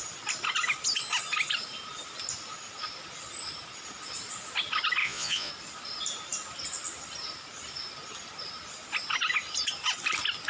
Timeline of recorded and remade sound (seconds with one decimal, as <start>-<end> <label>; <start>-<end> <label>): 0.0-5.0 recorded; 5.0-5.5 remade; 5.5-10.5 recorded